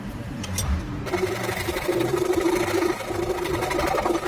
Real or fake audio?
fake